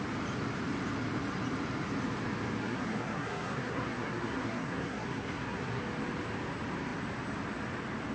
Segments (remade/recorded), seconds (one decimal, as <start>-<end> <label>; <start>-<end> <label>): 0.0-2.6 recorded; 2.6-5.8 remade; 5.8-8.1 recorded